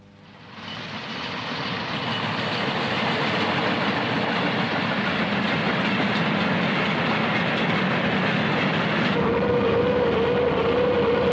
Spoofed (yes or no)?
no